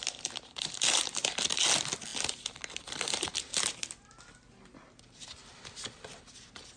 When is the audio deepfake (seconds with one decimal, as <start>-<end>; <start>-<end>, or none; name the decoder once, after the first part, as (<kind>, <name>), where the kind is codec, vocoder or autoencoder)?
none